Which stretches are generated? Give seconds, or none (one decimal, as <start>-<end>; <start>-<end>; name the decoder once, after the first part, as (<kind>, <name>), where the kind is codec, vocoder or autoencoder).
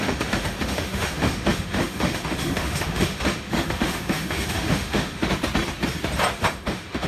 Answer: 0.0-5.3 (autoencoder, DAC-VAE); 6.3-7.1